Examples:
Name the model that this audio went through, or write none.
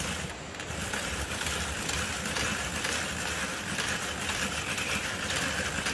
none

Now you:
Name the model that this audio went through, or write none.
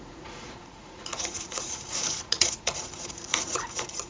vocoder, Vocos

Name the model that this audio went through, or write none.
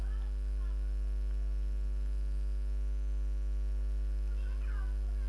none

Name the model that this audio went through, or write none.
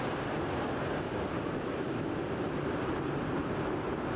none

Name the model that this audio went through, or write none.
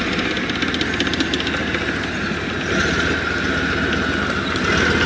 none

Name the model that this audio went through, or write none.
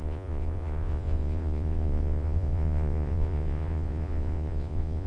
vocoder, Vocos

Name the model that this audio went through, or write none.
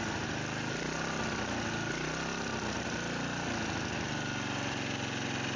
none